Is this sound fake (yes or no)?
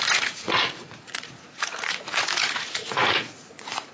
yes